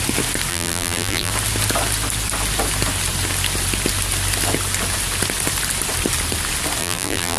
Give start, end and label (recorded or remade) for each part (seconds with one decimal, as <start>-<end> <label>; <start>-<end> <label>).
0.0-0.5 recorded; 0.5-1.3 remade; 1.3-6.8 recorded; 6.8-7.4 remade